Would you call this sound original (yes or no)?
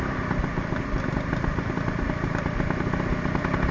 yes